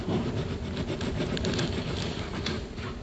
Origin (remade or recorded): recorded